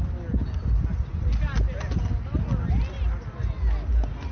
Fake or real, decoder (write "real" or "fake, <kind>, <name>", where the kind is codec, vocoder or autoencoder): real